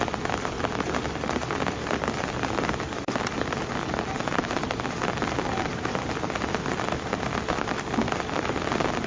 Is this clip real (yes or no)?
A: yes